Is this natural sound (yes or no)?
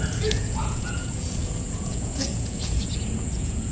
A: no